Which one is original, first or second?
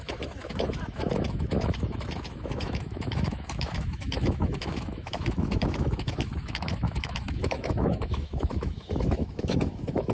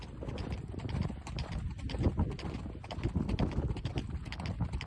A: second